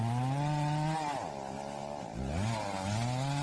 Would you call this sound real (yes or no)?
yes